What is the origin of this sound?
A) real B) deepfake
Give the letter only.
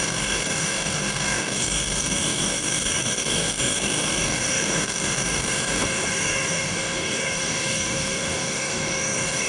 B